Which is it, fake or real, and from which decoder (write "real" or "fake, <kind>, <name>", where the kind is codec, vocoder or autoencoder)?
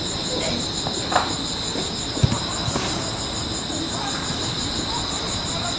real